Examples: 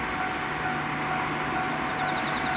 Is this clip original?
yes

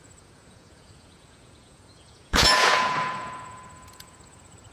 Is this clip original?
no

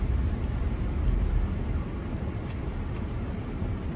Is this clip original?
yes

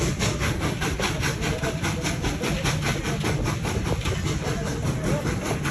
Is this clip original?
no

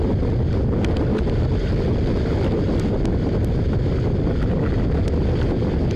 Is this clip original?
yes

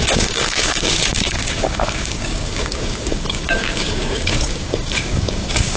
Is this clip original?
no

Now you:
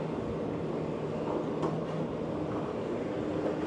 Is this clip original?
yes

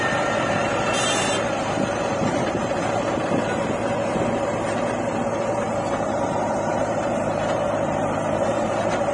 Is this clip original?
no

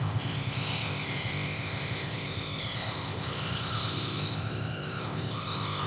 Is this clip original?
no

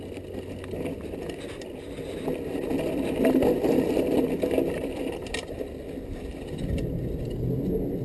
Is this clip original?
yes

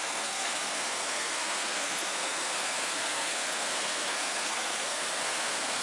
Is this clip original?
no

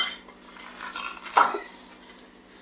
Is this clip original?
yes